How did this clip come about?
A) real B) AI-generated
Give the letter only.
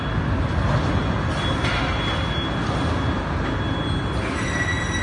A